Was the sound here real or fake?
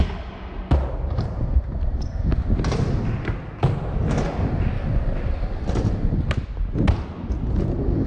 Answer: real